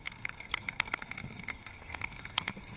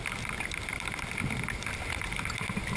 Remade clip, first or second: first